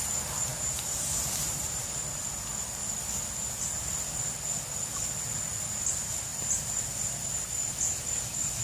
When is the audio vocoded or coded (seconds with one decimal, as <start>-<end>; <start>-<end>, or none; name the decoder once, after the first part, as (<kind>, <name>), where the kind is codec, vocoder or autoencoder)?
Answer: 0.5-2.2 (vocoder, BigVGAN v2)